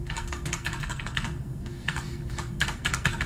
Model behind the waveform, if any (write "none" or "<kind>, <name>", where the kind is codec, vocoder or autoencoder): codec, SNAC